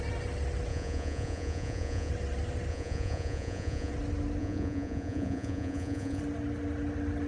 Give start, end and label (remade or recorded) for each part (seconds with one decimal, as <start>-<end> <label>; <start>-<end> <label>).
0.0-0.7 recorded; 0.7-2.1 remade; 2.1-2.7 recorded; 2.7-3.9 remade; 3.9-4.4 recorded; 4.4-6.2 remade; 6.2-7.3 recorded